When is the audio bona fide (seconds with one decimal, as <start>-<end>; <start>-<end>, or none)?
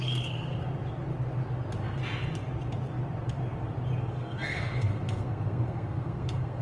0.7-4.0